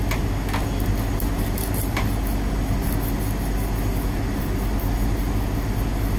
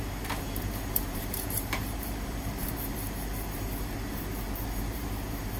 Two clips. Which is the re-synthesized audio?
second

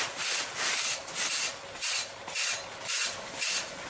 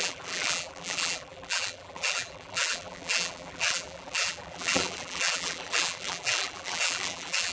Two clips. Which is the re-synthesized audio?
second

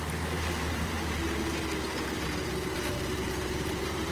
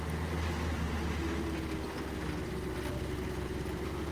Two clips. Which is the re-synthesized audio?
first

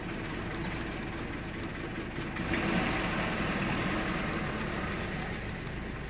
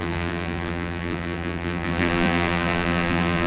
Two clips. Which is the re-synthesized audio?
second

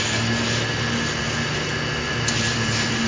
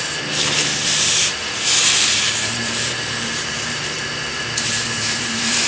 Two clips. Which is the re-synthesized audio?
second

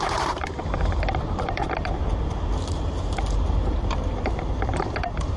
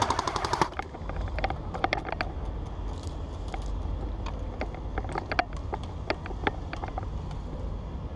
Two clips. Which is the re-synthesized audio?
first